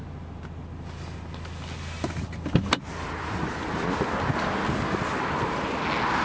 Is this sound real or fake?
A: real